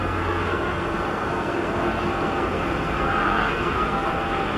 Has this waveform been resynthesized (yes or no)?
yes